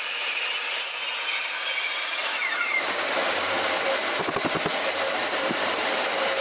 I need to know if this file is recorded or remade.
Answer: recorded